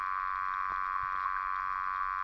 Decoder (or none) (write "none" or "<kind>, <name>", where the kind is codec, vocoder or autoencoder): none